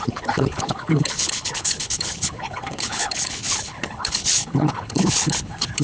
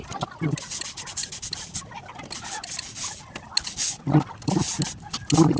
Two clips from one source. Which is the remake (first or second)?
first